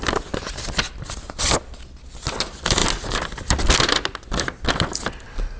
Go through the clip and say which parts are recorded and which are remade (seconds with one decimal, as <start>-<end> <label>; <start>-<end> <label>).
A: 0.0-5.6 recorded